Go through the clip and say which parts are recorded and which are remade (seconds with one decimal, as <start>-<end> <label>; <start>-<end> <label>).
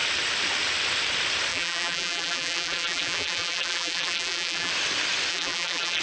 0.0-1.5 recorded; 1.5-4.7 remade; 4.7-5.3 recorded; 5.3-6.0 remade